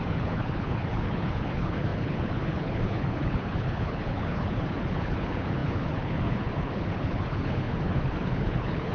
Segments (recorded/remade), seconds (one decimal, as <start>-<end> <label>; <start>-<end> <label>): 0.0-8.9 remade

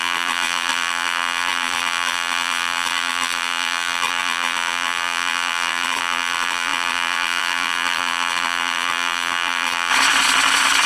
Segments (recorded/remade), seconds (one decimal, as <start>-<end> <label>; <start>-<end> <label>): 0.0-9.9 remade; 9.9-10.9 recorded